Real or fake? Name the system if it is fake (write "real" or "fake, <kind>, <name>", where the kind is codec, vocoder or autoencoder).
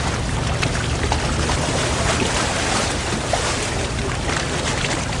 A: real